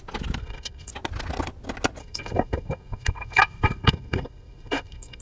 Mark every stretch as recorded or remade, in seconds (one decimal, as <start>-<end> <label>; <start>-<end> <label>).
0.0-0.4 recorded; 0.4-0.9 remade; 0.9-2.0 recorded; 2.0-5.2 remade